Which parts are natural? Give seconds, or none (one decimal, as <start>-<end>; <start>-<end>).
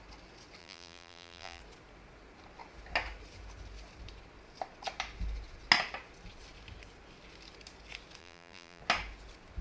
0.0-0.6; 1.6-8.2; 8.8-9.6